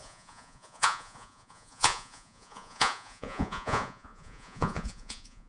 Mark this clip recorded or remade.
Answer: remade